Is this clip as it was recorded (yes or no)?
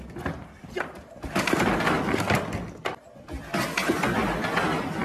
yes